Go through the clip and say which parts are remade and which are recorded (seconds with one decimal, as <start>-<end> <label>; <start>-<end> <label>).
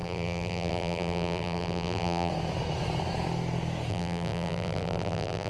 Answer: 0.0-2.3 remade; 2.3-3.9 recorded; 3.9-5.5 remade